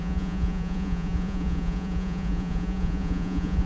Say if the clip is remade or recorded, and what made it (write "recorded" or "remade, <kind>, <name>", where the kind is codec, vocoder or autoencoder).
remade, vocoder, Vocos